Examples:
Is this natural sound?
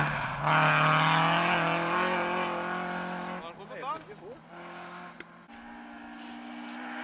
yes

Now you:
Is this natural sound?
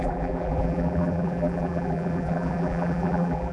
no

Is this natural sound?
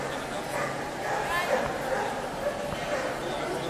yes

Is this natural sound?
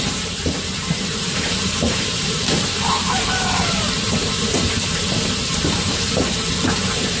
no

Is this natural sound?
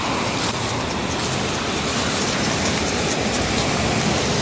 no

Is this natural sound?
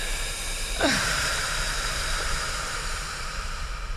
no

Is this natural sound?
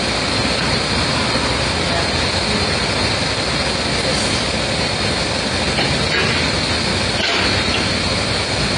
yes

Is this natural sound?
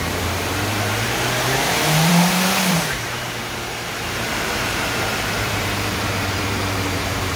no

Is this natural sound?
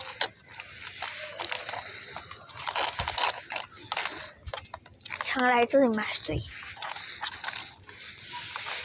yes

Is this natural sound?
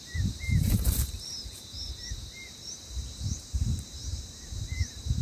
no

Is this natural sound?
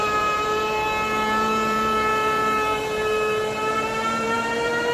no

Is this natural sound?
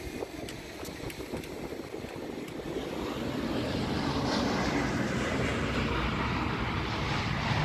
yes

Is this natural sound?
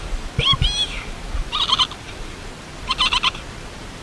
no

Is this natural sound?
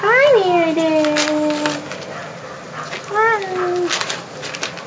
yes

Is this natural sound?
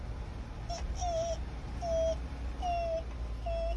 yes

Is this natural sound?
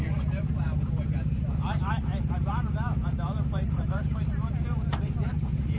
no